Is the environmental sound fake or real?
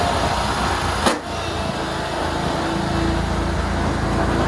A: real